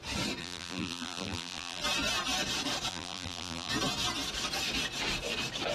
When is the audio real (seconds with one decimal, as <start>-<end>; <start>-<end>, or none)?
0.0-0.4; 1.8-2.9; 3.7-5.7